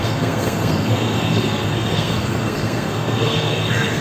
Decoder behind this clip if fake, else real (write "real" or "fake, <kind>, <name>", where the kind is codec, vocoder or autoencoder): fake, codec, SNAC